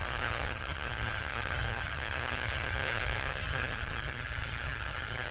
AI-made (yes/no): yes